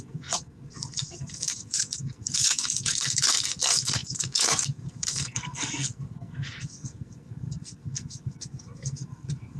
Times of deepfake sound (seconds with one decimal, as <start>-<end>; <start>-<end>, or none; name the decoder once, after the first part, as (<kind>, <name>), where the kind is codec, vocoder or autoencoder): 0.0-9.6 (codec, SNAC)